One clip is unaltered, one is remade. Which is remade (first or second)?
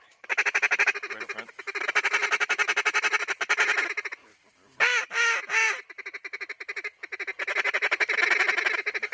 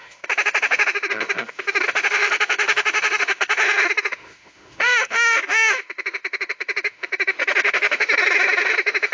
second